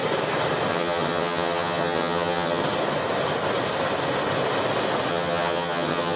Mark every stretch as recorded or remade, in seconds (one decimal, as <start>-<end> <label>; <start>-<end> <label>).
0.0-0.7 recorded; 0.7-2.6 remade; 2.6-5.1 recorded; 5.1-6.2 remade